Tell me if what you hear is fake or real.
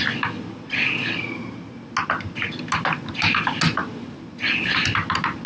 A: real